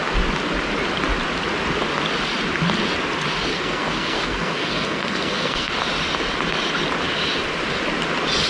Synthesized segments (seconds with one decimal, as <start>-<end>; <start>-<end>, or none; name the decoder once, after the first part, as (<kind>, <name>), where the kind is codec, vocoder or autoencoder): 3.5-5.7 (codec, SNAC)